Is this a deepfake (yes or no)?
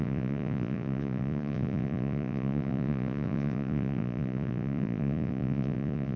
yes